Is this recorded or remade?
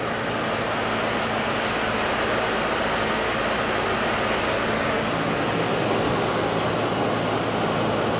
recorded